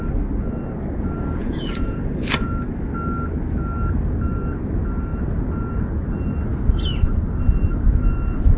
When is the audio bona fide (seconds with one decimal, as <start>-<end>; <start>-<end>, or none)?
0.0-1.4; 2.5-8.6